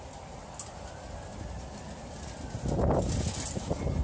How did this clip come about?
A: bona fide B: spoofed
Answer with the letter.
A